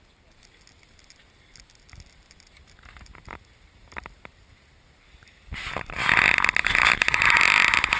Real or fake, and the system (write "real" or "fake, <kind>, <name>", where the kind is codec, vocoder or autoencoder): real